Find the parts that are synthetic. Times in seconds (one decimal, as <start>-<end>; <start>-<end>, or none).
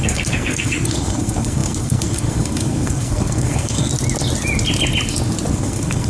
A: 0.0-3.9; 5.5-6.1